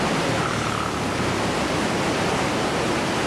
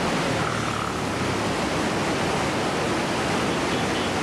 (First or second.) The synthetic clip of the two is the first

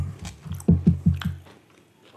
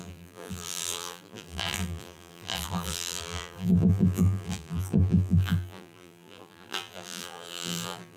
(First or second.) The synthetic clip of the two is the second